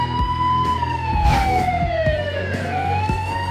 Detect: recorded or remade remade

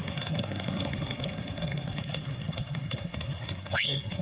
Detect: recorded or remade remade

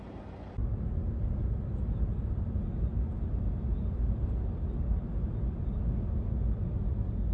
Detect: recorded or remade recorded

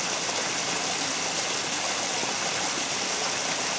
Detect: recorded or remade recorded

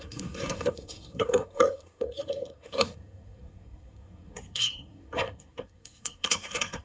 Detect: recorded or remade remade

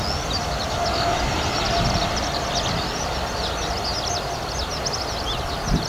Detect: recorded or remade recorded